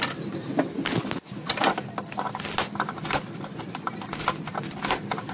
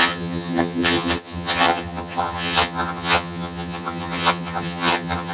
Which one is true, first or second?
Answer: first